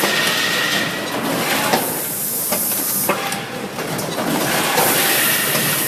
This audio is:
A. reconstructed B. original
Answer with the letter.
B